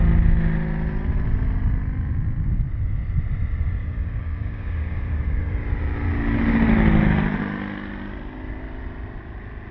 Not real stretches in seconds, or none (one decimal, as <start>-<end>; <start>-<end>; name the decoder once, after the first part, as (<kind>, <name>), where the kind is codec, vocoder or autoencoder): 3.8-5.4 (codec, DAC)

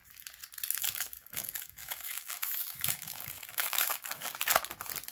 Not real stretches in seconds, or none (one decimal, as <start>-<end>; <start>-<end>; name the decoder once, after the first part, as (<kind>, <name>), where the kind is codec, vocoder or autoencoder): 0.8-4.3 (codec, DAC)